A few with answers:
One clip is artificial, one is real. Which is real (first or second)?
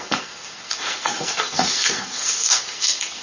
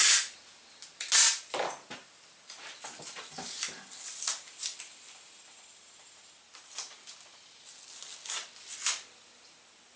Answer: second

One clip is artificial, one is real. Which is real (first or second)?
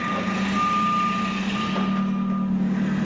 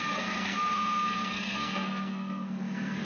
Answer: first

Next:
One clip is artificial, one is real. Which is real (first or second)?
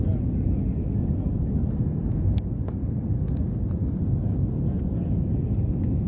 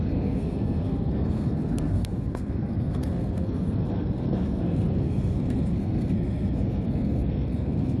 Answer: first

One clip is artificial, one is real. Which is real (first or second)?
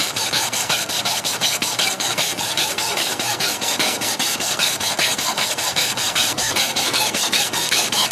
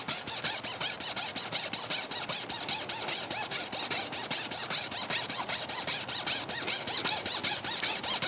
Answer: second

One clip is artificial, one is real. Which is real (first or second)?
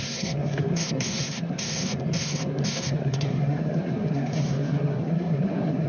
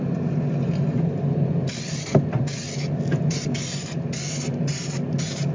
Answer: second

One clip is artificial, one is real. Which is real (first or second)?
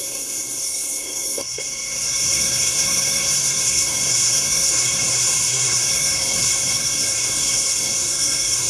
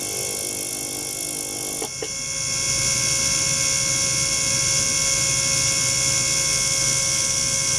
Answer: second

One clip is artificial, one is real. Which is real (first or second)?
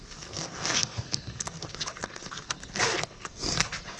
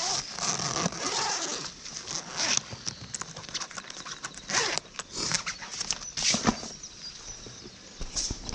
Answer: second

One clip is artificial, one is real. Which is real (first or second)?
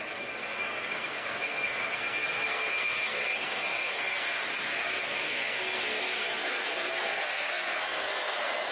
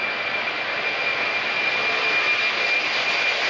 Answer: second